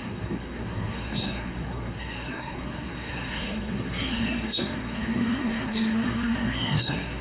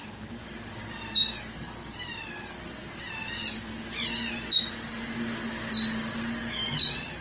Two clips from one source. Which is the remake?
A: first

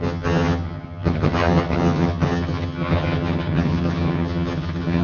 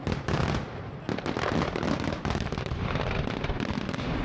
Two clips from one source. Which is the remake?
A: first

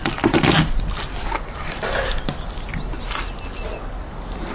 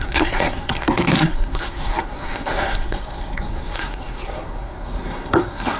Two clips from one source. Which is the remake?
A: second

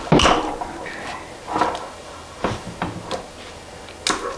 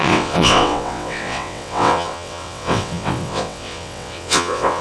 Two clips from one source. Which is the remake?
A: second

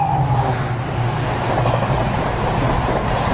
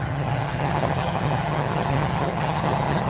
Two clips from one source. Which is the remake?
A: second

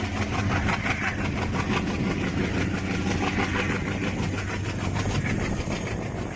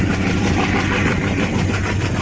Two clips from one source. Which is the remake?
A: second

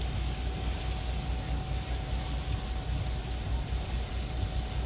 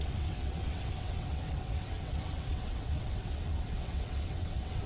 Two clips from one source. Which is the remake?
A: second